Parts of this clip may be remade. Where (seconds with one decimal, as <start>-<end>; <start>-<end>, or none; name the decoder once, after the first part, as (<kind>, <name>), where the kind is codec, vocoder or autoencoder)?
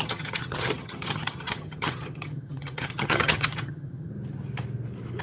0.0-4.1 (vocoder, HiFi-GAN)